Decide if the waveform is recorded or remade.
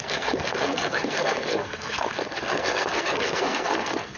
remade